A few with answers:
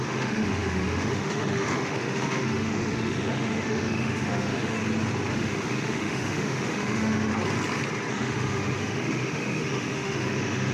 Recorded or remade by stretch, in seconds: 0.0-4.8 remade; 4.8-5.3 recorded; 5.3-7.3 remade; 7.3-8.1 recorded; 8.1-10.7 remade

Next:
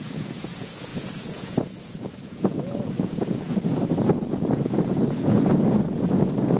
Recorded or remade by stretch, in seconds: 0.0-6.6 remade

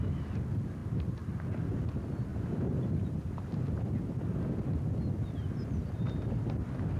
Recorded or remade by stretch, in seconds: 0.0-2.3 recorded; 2.3-3.6 remade; 3.6-7.0 recorded

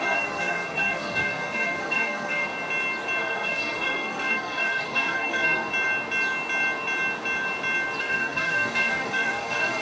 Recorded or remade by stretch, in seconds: 0.0-2.5 remade; 2.5-3.2 recorded; 3.2-5.7 remade; 5.7-8.0 recorded; 8.0-9.8 remade

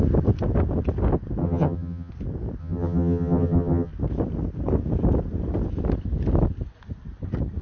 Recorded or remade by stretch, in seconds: 0.0-1.4 recorded; 1.4-2.1 remade; 2.1-2.6 recorded; 2.6-3.9 remade; 3.9-7.6 recorded

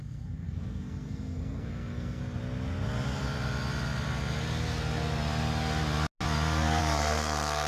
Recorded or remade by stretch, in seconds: 0.0-2.2 remade; 2.2-6.8 recorded; 6.8-7.7 remade

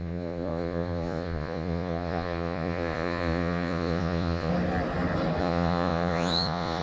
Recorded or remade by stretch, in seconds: 0.0-4.5 remade; 4.5-5.4 recorded; 5.4-6.8 remade